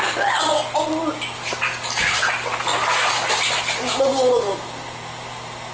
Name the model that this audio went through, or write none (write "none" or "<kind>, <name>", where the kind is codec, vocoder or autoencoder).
none